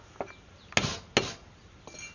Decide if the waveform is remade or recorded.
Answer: recorded